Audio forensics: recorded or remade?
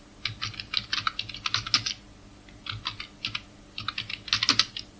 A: recorded